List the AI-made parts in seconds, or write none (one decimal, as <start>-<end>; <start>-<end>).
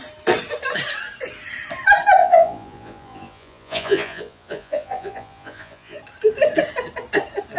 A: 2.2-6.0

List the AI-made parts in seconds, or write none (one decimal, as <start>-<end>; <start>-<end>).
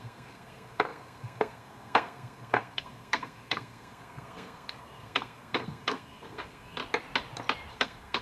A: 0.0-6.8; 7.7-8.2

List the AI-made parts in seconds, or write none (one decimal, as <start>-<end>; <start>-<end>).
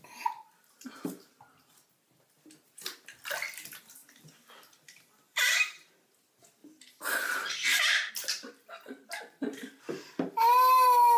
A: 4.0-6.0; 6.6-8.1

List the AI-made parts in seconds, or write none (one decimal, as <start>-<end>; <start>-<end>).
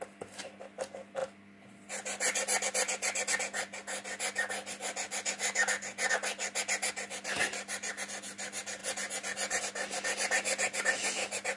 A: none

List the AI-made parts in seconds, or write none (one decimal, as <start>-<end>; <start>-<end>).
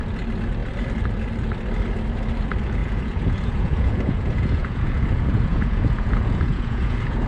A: 2.8-7.3